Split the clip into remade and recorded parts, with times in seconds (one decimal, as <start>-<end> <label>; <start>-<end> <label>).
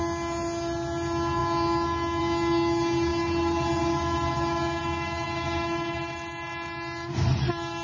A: 0.0-7.8 recorded